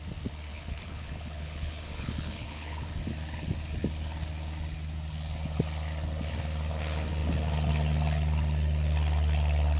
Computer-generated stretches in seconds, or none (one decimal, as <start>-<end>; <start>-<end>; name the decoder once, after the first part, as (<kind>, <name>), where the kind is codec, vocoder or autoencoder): 0.5-2.9 (codec, HILCodec)